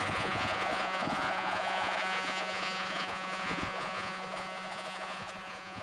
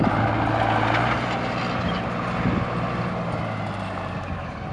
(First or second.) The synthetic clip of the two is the first